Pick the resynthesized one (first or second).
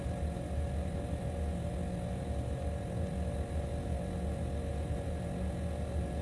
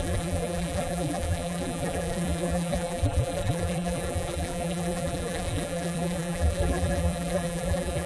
second